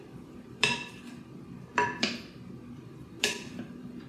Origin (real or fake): fake